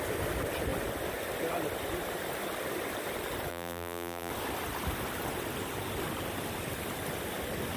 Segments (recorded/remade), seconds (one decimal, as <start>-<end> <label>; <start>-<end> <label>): 0.0-3.5 recorded; 3.5-4.3 remade; 4.3-7.8 recorded